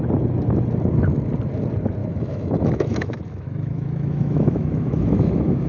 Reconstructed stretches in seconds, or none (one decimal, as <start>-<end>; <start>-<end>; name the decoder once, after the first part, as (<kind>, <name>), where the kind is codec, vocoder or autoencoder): 2.0-5.7 (autoencoder, DAC-VAE)